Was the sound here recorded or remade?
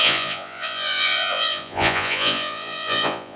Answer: remade